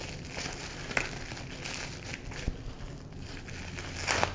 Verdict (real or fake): real